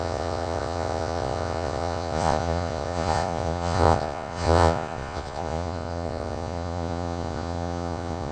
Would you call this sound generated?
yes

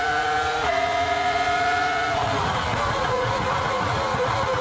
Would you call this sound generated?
yes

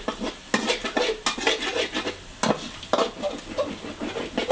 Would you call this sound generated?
no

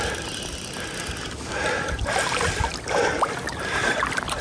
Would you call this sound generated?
no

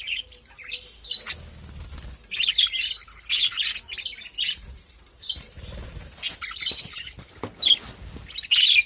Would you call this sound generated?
no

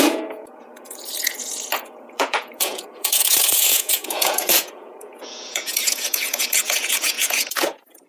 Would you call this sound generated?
yes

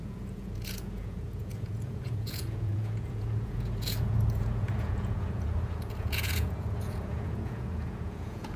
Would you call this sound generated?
yes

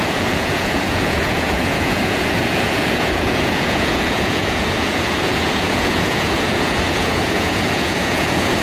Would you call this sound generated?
yes